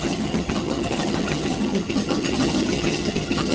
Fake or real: fake